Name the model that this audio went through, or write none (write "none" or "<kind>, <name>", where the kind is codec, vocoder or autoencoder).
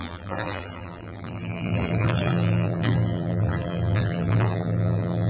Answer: vocoder, BigVGAN v2